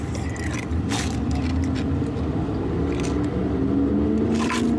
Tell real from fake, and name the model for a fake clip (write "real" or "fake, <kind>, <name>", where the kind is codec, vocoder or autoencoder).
real